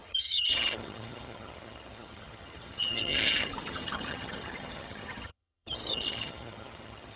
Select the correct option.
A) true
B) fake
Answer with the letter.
B